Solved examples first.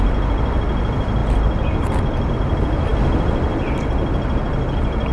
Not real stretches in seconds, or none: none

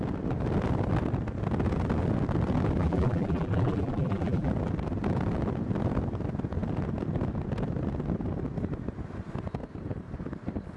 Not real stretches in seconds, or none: 2.8-4.5 (vocoder, BigVGAN v2)

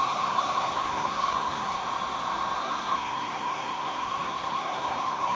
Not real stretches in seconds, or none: 0.0-1.8 (codec, SNAC); 2.6-5.3

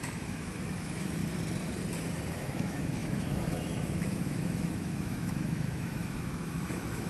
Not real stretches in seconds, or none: 0.0-1.2 (autoencoder, DAC-VAE); 2.3-7.1

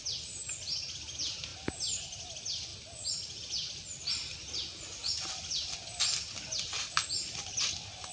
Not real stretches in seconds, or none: none

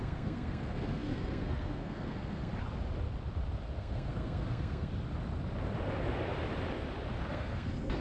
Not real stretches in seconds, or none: 0.0-2.5 (codec, SNAC); 3.8-4.9; 7.3-8.0

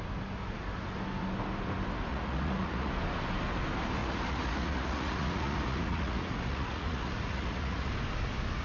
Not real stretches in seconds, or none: 2.1-2.9 (vocoder, Vocos); 4.0-7.9

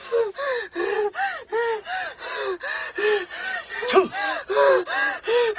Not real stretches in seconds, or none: none